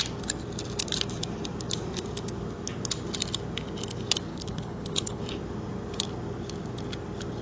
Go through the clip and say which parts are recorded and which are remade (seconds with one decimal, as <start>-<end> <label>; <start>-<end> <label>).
0.0-4.3 recorded; 4.3-5.2 remade; 5.2-7.4 recorded